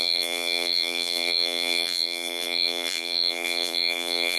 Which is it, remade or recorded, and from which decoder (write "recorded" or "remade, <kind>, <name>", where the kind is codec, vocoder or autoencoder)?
remade, vocoder, BigVGAN v2